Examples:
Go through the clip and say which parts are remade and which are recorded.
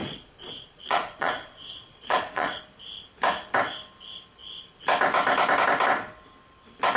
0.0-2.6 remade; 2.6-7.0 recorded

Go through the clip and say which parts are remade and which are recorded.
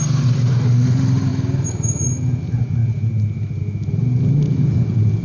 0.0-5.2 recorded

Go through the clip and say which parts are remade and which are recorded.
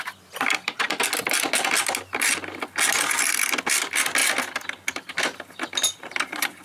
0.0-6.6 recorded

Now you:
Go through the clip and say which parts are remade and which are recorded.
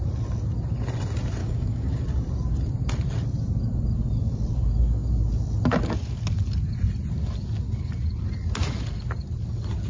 0.0-1.4 recorded; 1.4-1.9 remade; 1.9-9.9 recorded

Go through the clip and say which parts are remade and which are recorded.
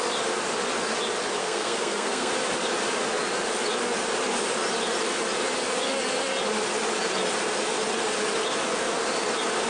0.0-1.4 recorded; 1.4-2.3 remade; 2.3-9.7 recorded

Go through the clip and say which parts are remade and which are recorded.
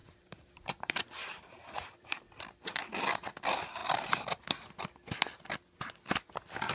0.0-2.2 remade; 2.2-3.8 recorded; 3.8-4.4 remade; 4.4-6.7 recorded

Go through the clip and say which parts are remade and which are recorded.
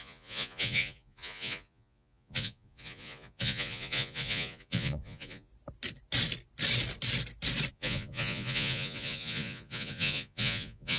0.0-5.5 remade; 5.5-7.7 recorded; 7.7-11.0 remade